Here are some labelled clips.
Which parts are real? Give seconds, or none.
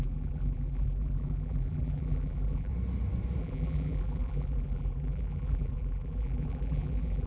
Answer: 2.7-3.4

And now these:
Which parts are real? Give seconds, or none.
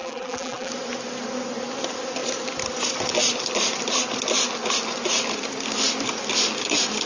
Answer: 0.7-7.1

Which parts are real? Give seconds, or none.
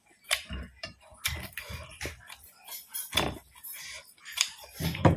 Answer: 1.1-4.2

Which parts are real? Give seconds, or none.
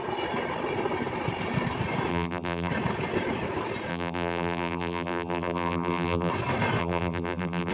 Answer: 0.0-2.1; 2.7-3.9; 6.3-6.8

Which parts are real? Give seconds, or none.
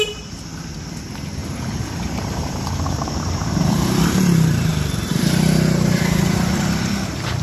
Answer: 0.5-1.0; 4.7-5.2